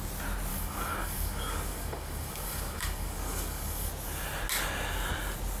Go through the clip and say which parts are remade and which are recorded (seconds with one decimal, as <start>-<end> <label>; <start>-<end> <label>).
0.0-0.5 recorded; 0.5-3.9 remade; 3.9-5.6 recorded